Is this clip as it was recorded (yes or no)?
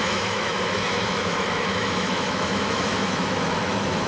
no